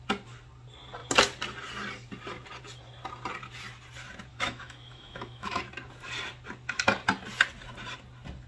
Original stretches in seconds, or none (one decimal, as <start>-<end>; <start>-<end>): 0.0-4.3; 5.6-8.5